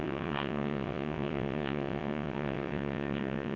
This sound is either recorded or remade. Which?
remade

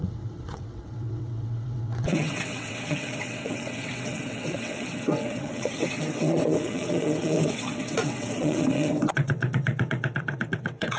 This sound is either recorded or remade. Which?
remade